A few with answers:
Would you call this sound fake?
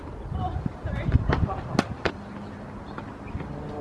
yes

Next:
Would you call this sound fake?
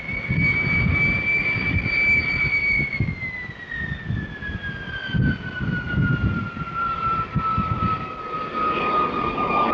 no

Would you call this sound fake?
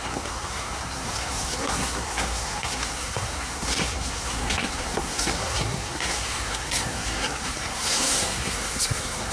yes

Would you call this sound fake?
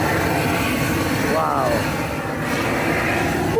no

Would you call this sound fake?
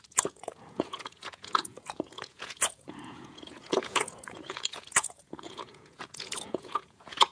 yes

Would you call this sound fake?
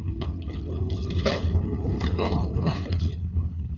yes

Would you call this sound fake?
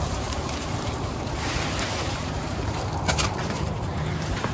yes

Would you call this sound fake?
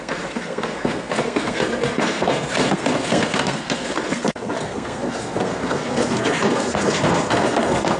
yes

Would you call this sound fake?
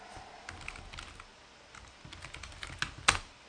no